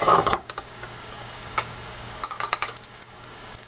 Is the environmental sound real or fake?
fake